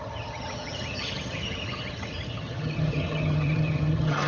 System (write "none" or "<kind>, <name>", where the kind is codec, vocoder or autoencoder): vocoder, HiFi-GAN